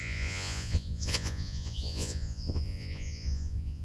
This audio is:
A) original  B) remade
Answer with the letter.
B